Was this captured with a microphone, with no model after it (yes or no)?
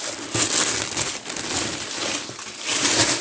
yes